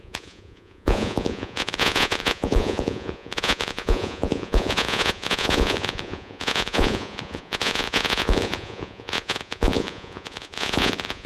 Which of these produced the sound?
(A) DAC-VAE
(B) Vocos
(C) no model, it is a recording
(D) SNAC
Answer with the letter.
B